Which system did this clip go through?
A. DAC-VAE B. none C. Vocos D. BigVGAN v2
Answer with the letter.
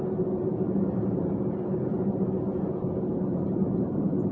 B